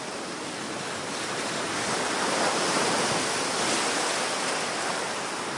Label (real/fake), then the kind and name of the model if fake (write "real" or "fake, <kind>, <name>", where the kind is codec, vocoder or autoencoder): real